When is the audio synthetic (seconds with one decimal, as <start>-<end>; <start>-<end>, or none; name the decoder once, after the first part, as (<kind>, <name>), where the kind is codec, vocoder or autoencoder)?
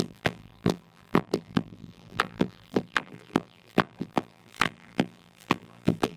0.0-6.2 (vocoder, BigVGAN v2)